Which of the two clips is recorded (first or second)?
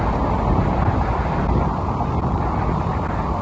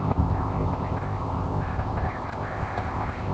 first